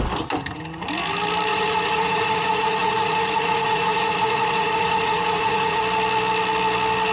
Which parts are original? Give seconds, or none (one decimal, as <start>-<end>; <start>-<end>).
0.0-1.5; 5.8-7.1